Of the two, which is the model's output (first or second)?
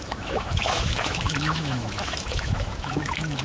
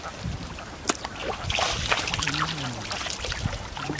first